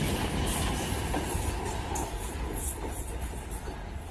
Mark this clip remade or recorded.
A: recorded